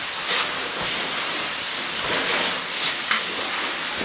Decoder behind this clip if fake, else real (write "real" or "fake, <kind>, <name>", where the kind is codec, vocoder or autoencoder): real